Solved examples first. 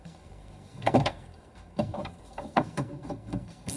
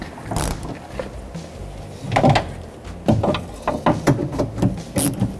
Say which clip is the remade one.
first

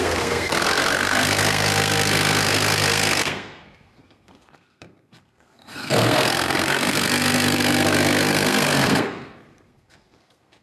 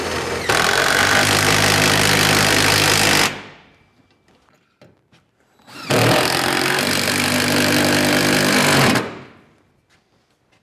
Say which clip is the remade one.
first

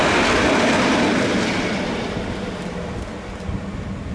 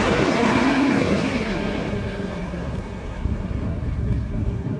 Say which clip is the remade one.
second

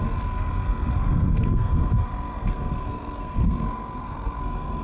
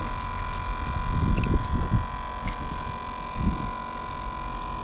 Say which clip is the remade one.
first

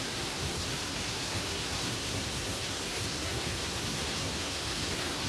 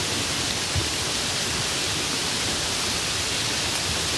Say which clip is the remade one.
first